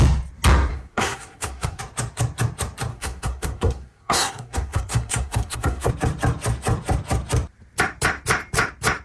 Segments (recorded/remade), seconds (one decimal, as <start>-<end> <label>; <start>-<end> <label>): 0.0-0.7 recorded; 0.7-1.8 remade; 1.8-2.9 recorded; 2.9-5.9 remade; 5.9-9.0 recorded